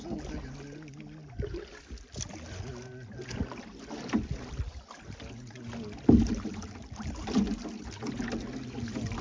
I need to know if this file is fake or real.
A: real